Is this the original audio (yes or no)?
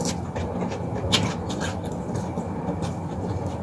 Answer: yes